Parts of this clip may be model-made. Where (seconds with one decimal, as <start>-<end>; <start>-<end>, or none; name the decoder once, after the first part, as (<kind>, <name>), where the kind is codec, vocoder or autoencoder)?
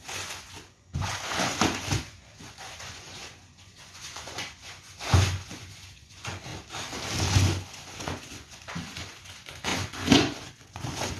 0.0-6.5 (vocoder, Vocos); 7.3-11.2